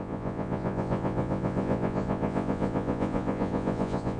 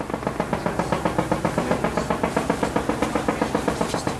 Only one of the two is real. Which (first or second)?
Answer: second